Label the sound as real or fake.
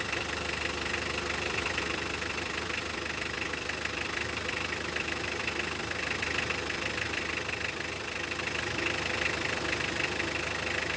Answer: fake